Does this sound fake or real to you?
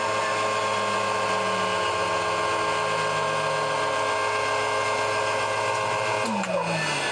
real